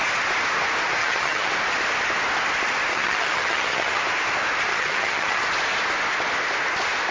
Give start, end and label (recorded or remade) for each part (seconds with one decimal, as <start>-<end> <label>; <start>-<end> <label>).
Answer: 0.0-1.0 recorded; 1.0-1.5 remade; 1.5-2.9 recorded; 2.9-4.0 remade; 4.0-4.7 recorded; 4.7-5.4 remade; 5.4-7.1 recorded